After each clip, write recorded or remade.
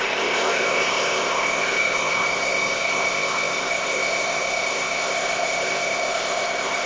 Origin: remade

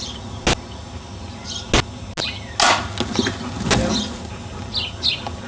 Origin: recorded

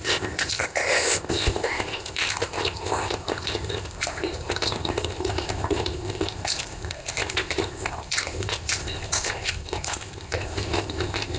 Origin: remade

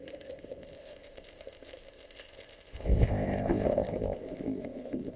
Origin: remade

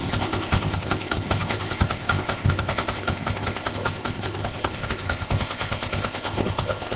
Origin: remade